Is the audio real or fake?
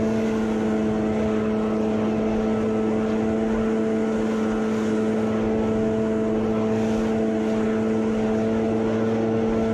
real